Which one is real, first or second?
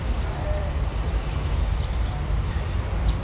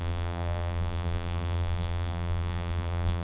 first